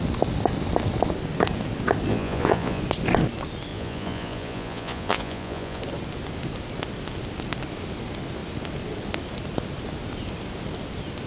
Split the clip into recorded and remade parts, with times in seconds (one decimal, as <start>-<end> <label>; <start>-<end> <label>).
0.0-2.1 recorded; 2.1-2.8 remade; 2.8-3.7 recorded; 3.7-5.8 remade; 5.8-11.3 recorded